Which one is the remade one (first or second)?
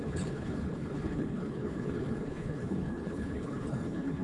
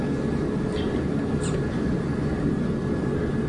first